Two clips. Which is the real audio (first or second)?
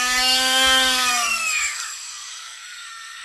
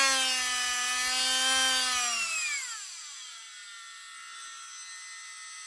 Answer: second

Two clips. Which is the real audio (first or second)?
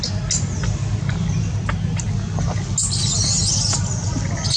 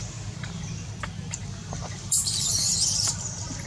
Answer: first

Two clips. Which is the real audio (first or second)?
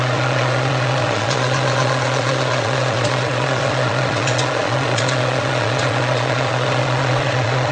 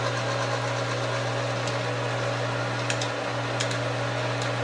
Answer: second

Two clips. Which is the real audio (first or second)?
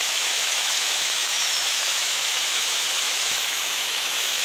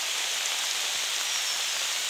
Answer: second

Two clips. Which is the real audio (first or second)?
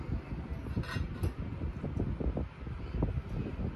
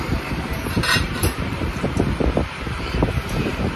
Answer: first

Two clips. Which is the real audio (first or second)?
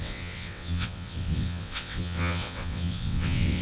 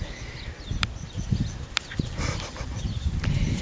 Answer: second